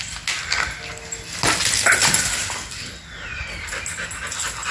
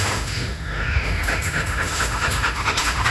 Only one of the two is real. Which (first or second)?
first